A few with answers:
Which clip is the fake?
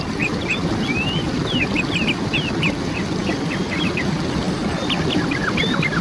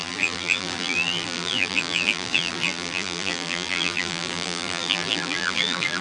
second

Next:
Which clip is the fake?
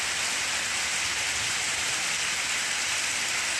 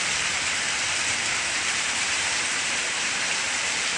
second